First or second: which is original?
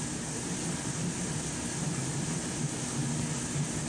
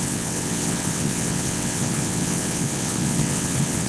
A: first